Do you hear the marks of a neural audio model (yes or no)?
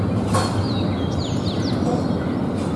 no